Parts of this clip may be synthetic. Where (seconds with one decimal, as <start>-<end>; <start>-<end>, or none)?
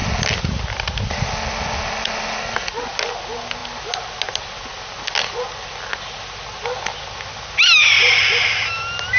none